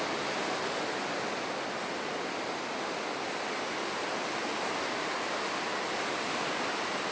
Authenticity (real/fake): real